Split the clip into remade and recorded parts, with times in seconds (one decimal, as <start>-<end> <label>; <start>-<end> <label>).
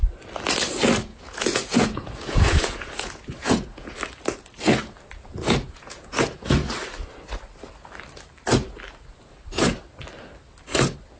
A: 0.0-1.1 recorded; 1.1-3.9 remade; 3.9-5.4 recorded; 5.4-6.7 remade; 6.7-11.2 recorded